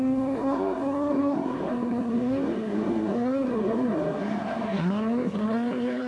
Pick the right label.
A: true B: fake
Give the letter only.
B